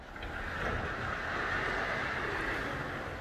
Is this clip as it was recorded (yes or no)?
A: yes